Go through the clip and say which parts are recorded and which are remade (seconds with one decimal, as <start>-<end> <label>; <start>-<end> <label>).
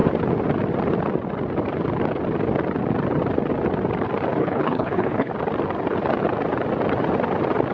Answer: 0.0-4.4 recorded; 4.4-5.3 remade; 5.3-7.7 recorded